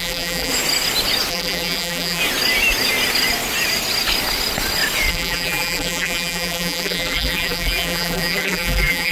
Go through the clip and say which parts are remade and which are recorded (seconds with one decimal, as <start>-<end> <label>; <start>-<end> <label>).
0.0-0.5 remade; 0.5-1.3 recorded; 1.3-2.2 remade; 2.2-5.1 recorded; 5.1-9.1 remade